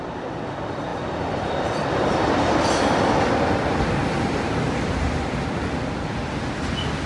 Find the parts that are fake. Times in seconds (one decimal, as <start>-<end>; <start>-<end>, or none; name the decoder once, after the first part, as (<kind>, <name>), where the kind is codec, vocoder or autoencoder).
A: none